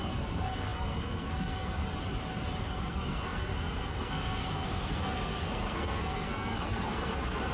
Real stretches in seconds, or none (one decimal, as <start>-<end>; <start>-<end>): 1.8-2.6